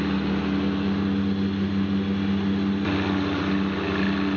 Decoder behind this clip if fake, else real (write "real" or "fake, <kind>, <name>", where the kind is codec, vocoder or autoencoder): real